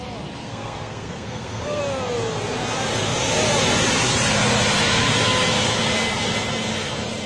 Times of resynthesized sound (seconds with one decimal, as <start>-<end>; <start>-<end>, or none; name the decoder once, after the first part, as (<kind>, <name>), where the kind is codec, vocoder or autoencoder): 0.4-1.8 (codec, SNAC)